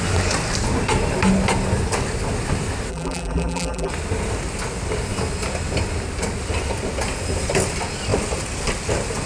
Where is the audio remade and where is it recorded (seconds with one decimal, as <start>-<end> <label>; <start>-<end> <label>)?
0.0-2.9 recorded; 2.9-3.9 remade; 3.9-9.3 recorded